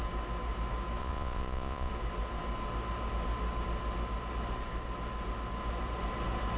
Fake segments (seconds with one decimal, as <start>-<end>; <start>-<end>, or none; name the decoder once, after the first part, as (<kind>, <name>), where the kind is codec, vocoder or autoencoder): 1.0-1.9 (vocoder, Vocos)